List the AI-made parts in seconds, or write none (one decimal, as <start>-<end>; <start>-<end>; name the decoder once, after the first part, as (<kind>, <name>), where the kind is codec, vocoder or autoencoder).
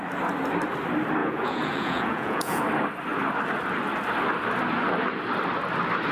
1.2-2.6 (vocoder, Vocos)